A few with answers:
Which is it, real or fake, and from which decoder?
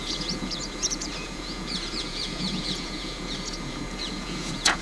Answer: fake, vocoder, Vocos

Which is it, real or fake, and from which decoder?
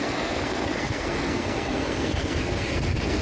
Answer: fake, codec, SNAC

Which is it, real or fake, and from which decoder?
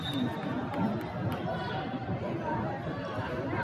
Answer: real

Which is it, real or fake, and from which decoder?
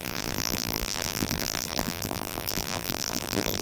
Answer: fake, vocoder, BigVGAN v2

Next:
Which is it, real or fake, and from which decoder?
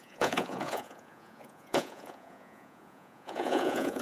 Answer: fake, vocoder, Vocos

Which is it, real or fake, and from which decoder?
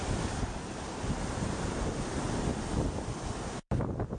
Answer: real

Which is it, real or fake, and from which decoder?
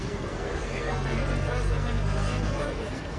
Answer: fake, codec, SNAC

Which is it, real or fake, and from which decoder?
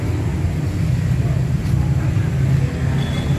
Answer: real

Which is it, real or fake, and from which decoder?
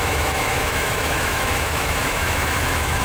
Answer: fake, autoencoder, DAC-VAE